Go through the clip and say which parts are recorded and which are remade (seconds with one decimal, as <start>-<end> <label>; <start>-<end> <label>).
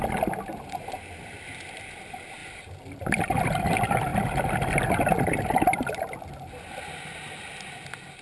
0.0-8.2 recorded